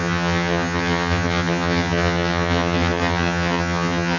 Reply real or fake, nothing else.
fake